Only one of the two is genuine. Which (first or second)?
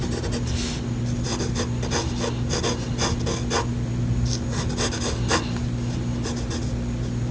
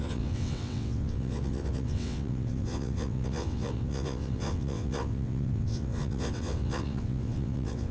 first